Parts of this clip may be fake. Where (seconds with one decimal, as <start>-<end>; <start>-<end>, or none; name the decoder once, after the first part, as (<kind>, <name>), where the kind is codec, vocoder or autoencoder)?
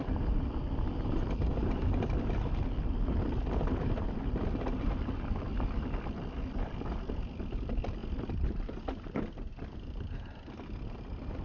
0.0-8.0 (vocoder, BigVGAN v2)